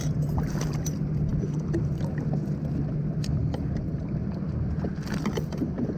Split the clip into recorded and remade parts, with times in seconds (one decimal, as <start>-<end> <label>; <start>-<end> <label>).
0.0-6.0 recorded